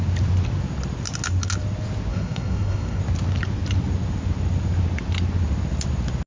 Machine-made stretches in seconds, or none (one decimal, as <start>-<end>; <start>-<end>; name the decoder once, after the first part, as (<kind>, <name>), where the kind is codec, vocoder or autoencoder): 2.1-3.0 (codec, SNAC)